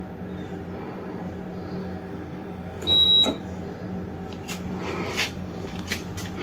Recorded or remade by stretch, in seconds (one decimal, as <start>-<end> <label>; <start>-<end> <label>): 0.0-1.8 recorded; 1.8-3.6 remade; 3.6-5.2 recorded; 5.2-5.9 remade; 5.9-6.4 recorded